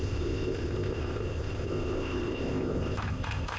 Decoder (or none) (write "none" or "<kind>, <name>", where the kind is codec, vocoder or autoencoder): codec, ZipCodec